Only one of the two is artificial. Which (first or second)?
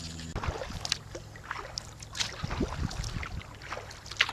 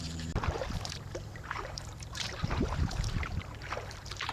second